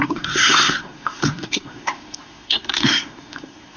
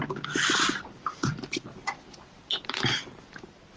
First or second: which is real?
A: second